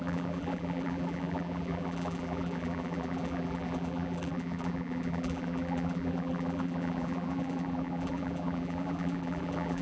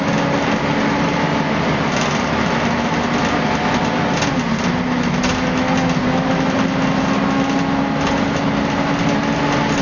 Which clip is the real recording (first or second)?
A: second